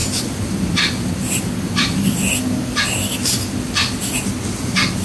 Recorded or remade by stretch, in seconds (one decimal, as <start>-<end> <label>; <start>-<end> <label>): 0.0-5.0 recorded